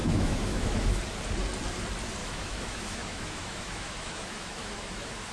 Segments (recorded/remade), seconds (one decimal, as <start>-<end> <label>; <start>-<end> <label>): 0.0-1.0 remade; 1.0-2.2 recorded; 2.2-5.3 remade

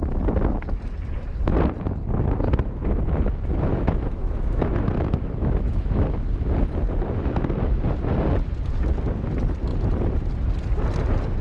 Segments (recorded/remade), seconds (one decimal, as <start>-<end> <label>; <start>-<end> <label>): 0.0-3.7 recorded; 3.7-6.2 remade; 6.2-11.4 recorded

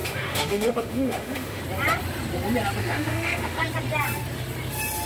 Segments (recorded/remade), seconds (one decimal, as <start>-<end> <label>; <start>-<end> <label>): 0.0-1.6 remade; 1.6-2.8 recorded; 2.8-3.6 remade; 3.6-5.1 recorded

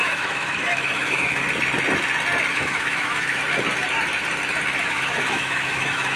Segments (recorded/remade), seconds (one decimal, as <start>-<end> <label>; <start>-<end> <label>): 0.0-1.4 remade; 1.4-2.5 recorded; 2.5-3.4 remade; 3.4-4.8 recorded; 4.8-6.2 remade

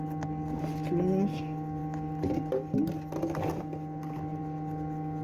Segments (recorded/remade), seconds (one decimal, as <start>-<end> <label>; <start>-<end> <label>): 0.0-5.2 recorded